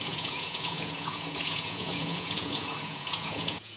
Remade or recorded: remade